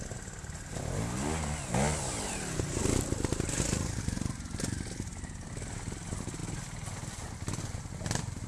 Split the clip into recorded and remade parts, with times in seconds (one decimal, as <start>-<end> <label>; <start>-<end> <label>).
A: 0.0-8.5 recorded

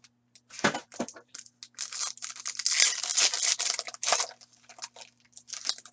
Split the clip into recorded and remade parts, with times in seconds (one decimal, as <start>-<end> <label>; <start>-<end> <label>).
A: 0.0-0.8 recorded; 0.8-1.3 remade; 1.3-5.9 recorded

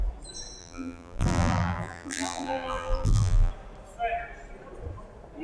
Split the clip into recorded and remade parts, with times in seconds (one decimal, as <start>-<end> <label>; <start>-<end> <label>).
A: 0.0-0.6 recorded; 0.6-3.5 remade; 3.5-5.4 recorded

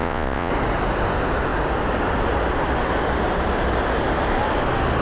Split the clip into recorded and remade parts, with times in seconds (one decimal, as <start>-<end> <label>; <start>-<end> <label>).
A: 0.0-0.5 remade; 0.5-5.0 recorded